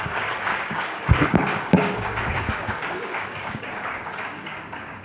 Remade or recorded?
remade